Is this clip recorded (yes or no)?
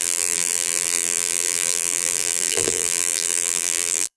no